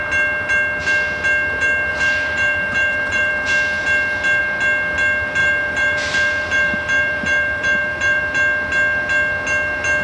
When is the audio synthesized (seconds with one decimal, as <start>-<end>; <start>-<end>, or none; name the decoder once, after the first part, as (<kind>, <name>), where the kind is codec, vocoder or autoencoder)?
1.9-3.3 (vocoder, BigVGAN v2); 5.4-8.2